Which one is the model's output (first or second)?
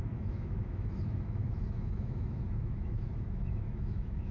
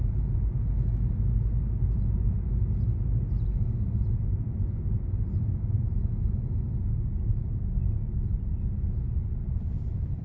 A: first